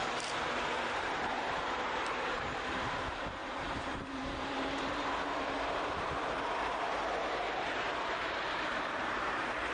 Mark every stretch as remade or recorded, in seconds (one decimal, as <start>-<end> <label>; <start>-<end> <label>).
0.0-0.9 recorded; 0.9-9.7 remade